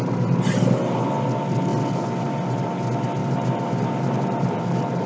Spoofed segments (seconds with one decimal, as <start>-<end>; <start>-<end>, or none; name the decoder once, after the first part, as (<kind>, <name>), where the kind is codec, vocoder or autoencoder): 3.2-5.1 (vocoder, BigVGAN v2)